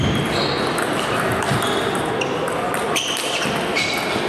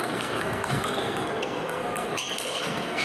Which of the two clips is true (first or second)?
first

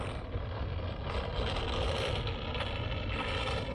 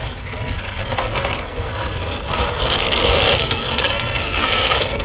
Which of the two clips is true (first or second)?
first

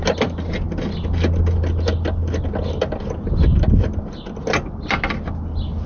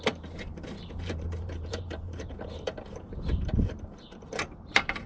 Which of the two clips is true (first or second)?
first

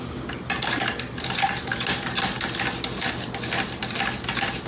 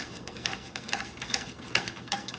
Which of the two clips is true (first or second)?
first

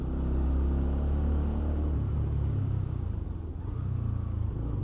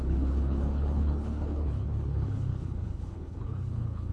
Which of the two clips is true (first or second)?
first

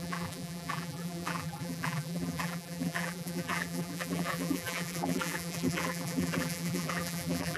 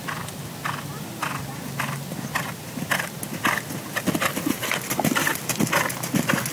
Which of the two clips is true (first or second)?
second